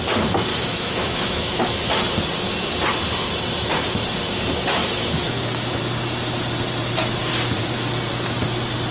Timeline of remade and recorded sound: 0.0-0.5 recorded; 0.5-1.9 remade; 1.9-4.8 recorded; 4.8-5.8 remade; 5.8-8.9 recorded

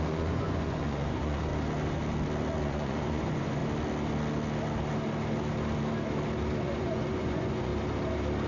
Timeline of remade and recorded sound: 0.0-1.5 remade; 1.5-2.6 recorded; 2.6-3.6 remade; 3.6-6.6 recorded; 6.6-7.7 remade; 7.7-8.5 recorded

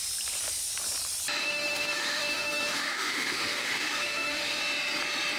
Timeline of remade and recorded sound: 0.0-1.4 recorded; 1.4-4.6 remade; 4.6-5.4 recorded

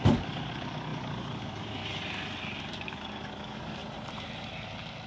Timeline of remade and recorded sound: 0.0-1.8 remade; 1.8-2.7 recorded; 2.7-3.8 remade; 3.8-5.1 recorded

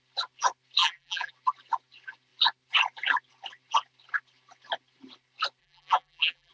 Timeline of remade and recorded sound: 0.0-0.8 recorded; 0.8-1.3 remade; 1.3-5.6 recorded; 5.6-6.5 remade

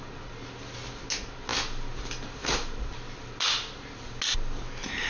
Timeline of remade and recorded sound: 0.0-5.1 recorded